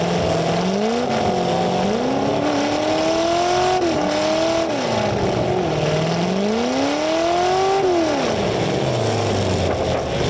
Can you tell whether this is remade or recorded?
recorded